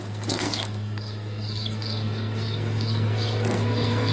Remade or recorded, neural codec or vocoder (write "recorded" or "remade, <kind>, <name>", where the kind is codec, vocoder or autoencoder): remade, codec, SNAC